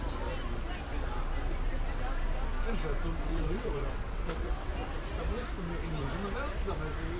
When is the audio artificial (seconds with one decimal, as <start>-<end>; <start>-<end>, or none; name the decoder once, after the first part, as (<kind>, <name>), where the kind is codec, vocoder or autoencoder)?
3.2-4.7 (vocoder, WaveNeXt)